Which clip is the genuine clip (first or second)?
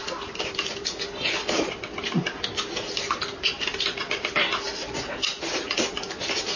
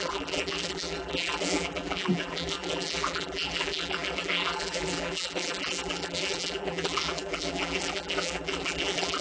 first